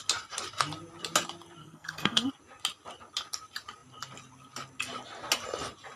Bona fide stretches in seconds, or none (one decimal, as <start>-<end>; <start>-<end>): 0.0-1.6; 2.3-6.0